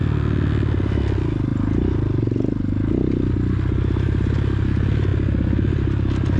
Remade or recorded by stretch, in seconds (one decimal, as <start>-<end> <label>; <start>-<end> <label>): 0.0-6.4 recorded